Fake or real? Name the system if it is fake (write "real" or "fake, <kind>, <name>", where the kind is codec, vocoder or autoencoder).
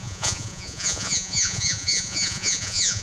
fake, vocoder, Vocos